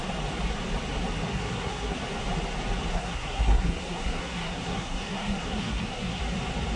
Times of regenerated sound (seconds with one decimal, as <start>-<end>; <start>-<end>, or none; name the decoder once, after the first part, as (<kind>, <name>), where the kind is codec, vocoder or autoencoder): 1.3-2.0 (codec, SNAC); 2.9-6.2